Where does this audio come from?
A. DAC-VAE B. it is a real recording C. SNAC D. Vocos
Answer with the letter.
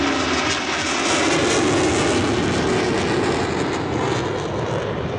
B